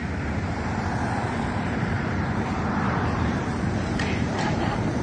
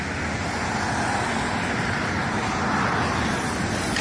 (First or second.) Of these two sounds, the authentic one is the second